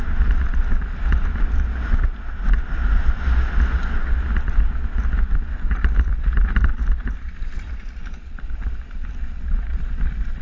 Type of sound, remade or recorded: recorded